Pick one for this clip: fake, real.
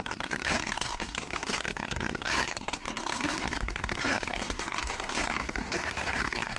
fake